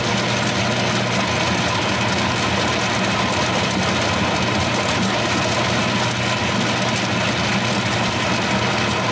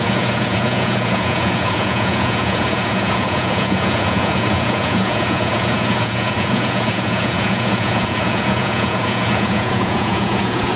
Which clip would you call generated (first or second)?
second